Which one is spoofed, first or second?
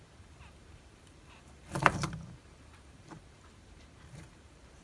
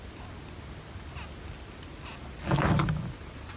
first